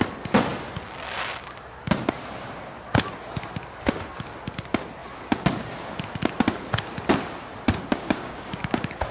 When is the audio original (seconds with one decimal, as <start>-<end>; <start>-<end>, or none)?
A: 0.0-7.9